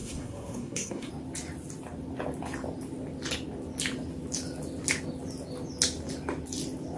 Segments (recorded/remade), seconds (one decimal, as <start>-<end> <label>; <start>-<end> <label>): 0.0-1.1 remade; 1.1-7.0 recorded